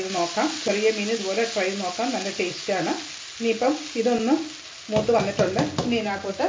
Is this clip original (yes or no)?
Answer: yes